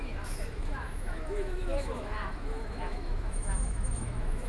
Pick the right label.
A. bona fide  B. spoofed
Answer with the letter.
B